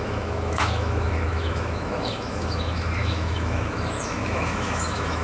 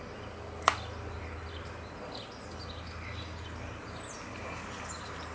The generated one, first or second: first